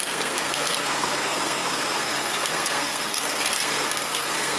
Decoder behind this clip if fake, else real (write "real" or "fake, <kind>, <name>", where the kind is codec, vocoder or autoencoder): fake, codec, SNAC